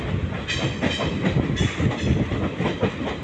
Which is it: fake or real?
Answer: real